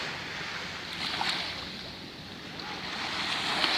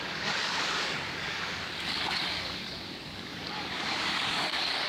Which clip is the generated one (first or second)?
second